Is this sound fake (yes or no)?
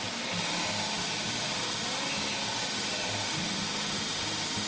no